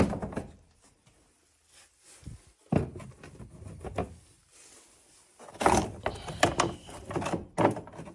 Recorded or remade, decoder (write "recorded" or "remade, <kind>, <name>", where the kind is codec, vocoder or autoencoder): recorded